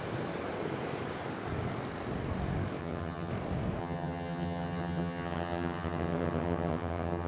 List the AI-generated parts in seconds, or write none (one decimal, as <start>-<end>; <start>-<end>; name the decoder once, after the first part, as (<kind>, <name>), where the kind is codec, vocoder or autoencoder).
2.8-3.3 (vocoder, HiFi-GAN); 3.8-7.3

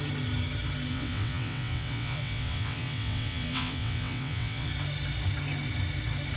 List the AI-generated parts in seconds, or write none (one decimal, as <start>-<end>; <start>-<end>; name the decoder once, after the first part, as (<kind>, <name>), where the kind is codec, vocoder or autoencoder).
0.9-4.7 (vocoder, WaveNeXt)

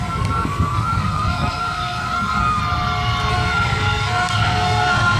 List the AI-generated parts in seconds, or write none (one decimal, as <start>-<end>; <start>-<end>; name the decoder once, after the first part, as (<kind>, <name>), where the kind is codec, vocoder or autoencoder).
0.0-2.6 (codec, SNAC); 3.3-5.2

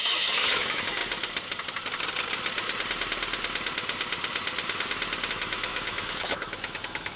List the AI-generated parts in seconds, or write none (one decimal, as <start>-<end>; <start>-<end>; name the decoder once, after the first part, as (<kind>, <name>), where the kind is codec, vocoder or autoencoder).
0.0-1.0 (autoencoder, DAC-VAE); 5.3-7.2

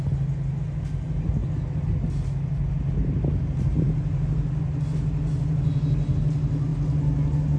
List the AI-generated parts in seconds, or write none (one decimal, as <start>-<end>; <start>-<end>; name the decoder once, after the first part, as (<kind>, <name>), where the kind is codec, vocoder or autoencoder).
none

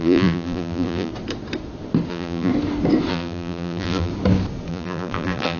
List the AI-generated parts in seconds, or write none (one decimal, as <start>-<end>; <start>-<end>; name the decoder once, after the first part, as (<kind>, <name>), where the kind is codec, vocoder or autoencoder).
0.0-1.1 (vocoder, BigVGAN v2); 2.1-2.5; 3.1-4.1; 4.7-5.6

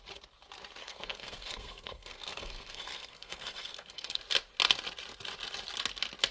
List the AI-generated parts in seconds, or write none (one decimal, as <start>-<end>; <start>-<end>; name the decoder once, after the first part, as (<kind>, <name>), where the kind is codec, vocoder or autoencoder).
0.8-4.2 (codec, SNAC)